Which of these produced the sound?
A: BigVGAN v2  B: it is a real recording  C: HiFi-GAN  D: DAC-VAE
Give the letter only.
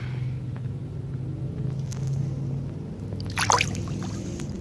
B